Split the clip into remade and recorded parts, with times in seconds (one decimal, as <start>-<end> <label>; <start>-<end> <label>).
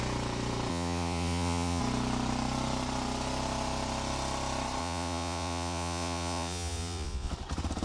0.0-0.7 recorded; 0.7-1.8 remade; 1.8-4.8 recorded; 4.8-7.3 remade; 7.3-7.8 recorded